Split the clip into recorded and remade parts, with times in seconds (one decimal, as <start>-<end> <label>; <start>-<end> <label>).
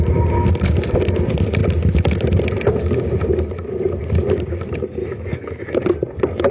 0.0-5.0 recorded; 5.0-5.8 remade; 5.8-6.5 recorded